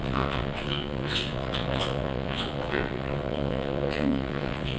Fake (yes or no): yes